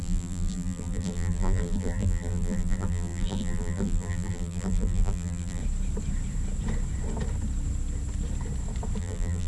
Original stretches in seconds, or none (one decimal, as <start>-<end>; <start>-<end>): 5.6-9.0

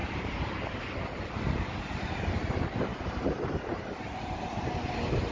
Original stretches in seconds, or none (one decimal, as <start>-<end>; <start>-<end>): 0.5-2.9; 4.7-5.3

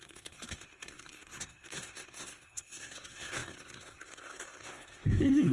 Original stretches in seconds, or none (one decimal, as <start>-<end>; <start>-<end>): none

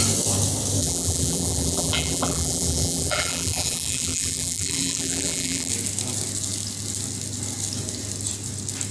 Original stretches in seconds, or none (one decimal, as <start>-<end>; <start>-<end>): 0.0-0.8; 5.7-8.9

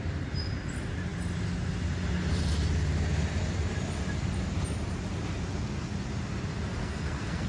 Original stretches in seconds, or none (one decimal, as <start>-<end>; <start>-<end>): 0.0-6.8

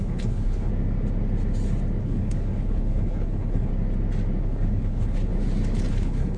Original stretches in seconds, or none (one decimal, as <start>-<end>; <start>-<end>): 0.7-2.0; 3.7-4.4; 5.3-5.9

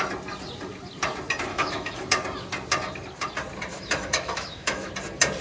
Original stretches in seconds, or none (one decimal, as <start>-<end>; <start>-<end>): 0.0-1.5; 2.0-3.7; 4.9-5.4

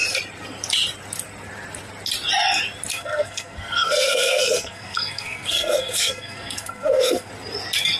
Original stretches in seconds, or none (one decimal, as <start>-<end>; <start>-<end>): 0.0-2.9; 7.3-8.0